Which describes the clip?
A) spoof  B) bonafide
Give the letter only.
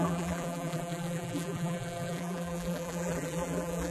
A